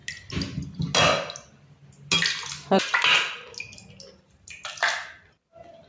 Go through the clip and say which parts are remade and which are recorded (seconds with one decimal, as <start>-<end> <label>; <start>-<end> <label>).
0.0-5.9 recorded